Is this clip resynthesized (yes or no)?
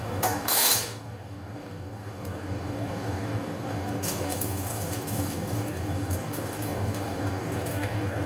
yes